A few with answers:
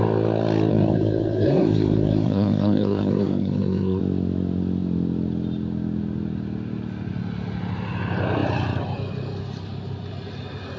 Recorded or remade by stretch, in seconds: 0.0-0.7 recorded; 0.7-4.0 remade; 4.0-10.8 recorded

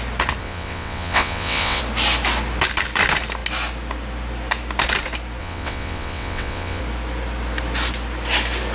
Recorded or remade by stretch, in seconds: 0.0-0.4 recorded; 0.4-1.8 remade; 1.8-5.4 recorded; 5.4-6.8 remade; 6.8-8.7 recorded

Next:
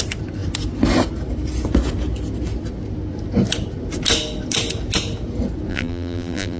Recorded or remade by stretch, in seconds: 0.0-5.7 recorded; 5.7-6.6 remade

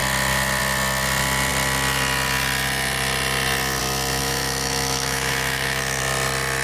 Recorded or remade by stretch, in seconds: 0.0-4.2 recorded; 4.2-6.0 remade; 6.0-6.6 recorded

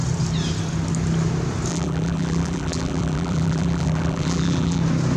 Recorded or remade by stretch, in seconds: 0.0-1.7 recorded; 1.7-4.8 remade; 4.8-5.2 recorded